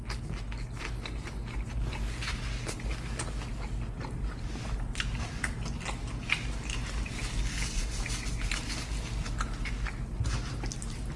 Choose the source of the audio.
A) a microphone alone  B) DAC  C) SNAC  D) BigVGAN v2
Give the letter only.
A